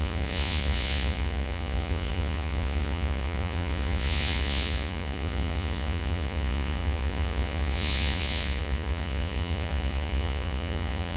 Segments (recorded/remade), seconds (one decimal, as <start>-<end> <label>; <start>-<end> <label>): 0.0-11.2 remade